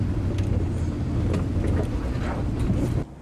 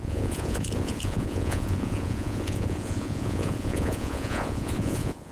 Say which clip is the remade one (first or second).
second